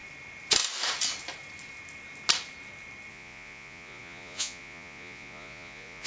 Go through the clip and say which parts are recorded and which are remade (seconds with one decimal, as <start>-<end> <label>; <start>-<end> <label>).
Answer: 0.0-3.1 recorded; 3.1-6.1 remade